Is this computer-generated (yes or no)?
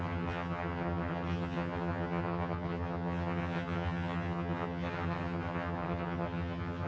yes